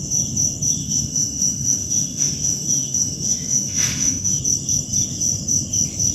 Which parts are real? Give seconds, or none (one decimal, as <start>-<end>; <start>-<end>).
0.0-0.8; 4.4-6.1